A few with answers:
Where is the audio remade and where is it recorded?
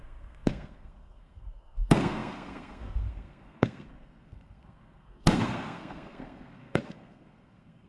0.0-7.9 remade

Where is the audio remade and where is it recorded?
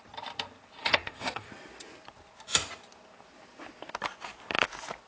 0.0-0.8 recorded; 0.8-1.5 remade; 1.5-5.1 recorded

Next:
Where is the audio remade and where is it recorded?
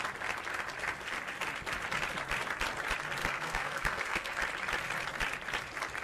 0.0-3.2 recorded; 3.2-4.4 remade; 4.4-6.0 recorded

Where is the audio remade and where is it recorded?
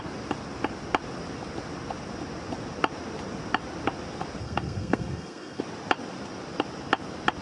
0.0-4.4 recorded; 4.4-5.6 remade; 5.6-7.4 recorded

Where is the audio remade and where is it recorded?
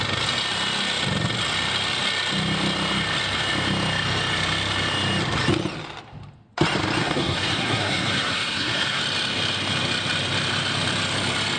0.0-7.0 recorded; 7.0-9.0 remade; 9.0-11.6 recorded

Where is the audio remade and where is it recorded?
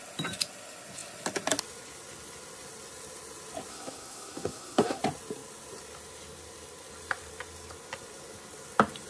0.0-3.7 recorded; 3.7-5.0 remade; 5.0-9.1 recorded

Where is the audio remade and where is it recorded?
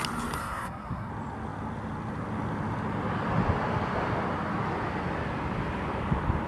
0.0-0.4 recorded; 0.4-1.1 remade; 1.1-6.5 recorded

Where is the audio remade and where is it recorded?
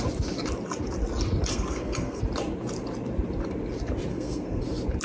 0.0-1.5 recorded; 1.5-2.2 remade; 2.2-4.1 recorded; 4.1-4.6 remade; 4.6-5.0 recorded